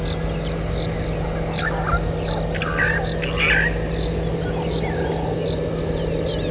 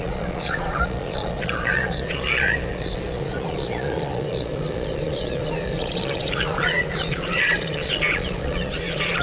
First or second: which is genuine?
first